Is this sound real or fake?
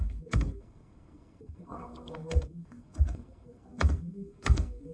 fake